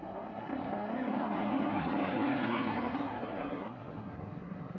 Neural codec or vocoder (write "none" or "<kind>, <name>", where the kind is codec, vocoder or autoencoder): codec, SNAC